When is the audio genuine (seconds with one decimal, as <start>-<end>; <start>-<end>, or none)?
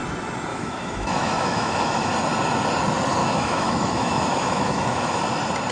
0.0-0.5; 2.1-3.2; 5.2-5.7